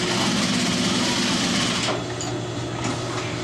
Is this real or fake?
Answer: real